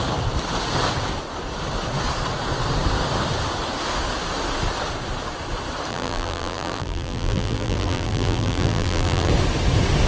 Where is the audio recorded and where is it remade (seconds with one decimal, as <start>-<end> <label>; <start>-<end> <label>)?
0.0-5.9 recorded; 5.9-9.3 remade; 9.3-10.1 recorded